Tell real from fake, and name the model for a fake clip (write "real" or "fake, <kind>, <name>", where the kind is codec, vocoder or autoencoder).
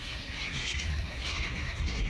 fake, codec, SNAC